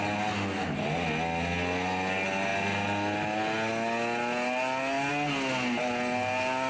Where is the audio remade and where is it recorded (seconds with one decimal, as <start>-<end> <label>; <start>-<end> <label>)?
0.0-6.7 recorded